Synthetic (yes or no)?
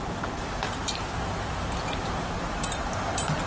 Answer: yes